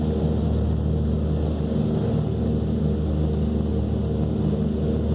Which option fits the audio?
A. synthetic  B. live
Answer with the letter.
B